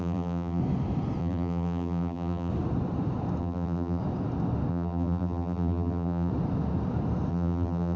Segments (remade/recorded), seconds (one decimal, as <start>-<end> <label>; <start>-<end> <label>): 0.0-0.6 remade; 0.6-1.2 recorded; 1.2-2.5 remade; 2.5-3.4 recorded; 3.4-4.0 remade; 4.0-4.7 recorded; 4.7-6.3 remade; 6.3-7.3 recorded; 7.3-8.0 remade